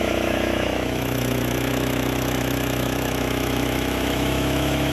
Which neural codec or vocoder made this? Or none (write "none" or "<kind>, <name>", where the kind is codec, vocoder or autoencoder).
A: autoencoder, DAC-VAE